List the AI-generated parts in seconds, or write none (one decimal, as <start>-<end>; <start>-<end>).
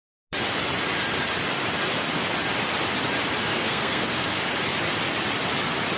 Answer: 3.5-4.4